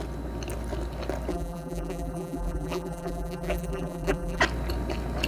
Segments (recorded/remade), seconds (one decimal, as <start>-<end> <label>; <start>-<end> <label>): 0.0-1.3 recorded; 1.3-4.4 remade; 4.4-5.3 recorded